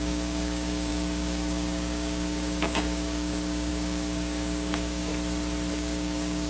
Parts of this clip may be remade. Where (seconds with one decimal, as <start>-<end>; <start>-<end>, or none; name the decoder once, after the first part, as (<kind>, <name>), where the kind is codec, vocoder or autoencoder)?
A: 0.0-5.1 (codec, DAC); 5.7-6.5